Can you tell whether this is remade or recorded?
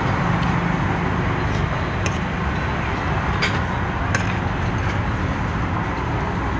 recorded